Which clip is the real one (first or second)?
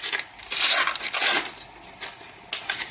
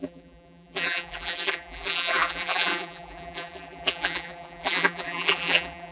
first